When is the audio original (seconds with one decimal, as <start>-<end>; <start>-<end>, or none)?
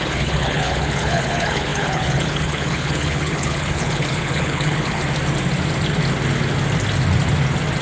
5.0-7.8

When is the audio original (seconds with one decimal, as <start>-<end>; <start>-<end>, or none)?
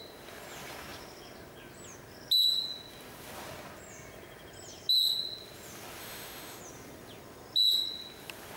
0.0-6.0; 6.6-8.6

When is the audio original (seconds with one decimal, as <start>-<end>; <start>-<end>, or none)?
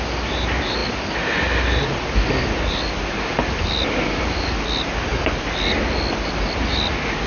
0.0-7.3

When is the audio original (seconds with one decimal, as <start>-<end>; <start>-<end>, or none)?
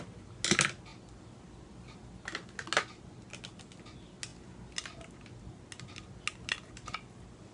0.0-7.5